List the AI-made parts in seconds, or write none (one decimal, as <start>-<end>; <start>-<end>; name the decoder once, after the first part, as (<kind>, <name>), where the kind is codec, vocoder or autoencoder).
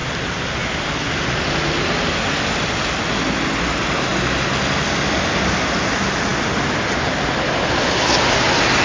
none